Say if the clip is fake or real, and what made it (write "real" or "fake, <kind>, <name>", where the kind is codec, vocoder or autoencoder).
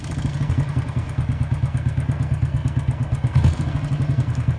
fake, codec, SNAC